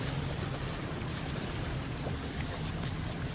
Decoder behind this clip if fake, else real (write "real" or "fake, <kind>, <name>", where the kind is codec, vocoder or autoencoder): fake, vocoder, BigVGAN v2